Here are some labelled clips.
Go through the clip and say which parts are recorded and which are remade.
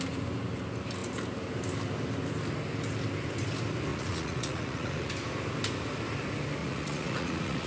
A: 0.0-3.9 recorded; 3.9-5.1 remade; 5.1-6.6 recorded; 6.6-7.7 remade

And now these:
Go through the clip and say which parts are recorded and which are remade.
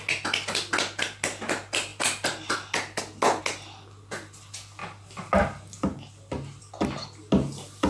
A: 0.0-7.9 recorded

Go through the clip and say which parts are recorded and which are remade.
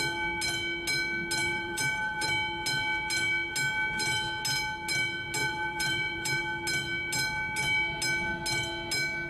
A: 0.0-1.4 recorded; 1.4-2.3 remade; 2.3-5.4 recorded; 5.4-6.4 remade; 6.4-9.3 recorded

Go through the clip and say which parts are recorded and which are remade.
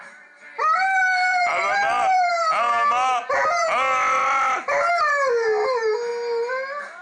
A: 0.0-1.3 recorded; 1.3-2.3 remade; 2.3-4.2 recorded; 4.2-4.9 remade; 4.9-7.0 recorded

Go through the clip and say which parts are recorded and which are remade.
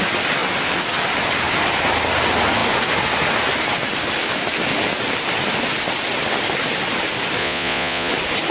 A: 0.0-7.4 recorded; 7.4-8.1 remade; 8.1-8.5 recorded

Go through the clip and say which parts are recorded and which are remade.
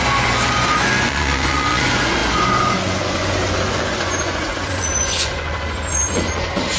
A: 0.0-6.8 remade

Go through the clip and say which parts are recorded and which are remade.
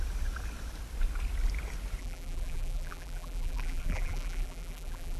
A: 0.0-2.0 recorded; 2.0-5.2 remade